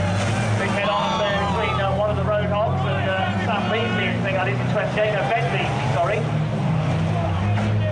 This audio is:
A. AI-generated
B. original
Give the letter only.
B